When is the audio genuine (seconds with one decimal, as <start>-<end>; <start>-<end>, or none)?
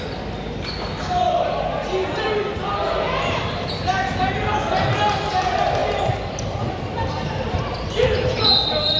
0.0-5.8